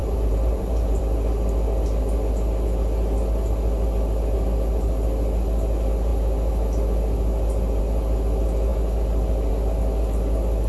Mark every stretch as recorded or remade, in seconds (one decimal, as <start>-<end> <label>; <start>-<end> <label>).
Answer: 0.0-1.0 remade; 1.0-10.7 recorded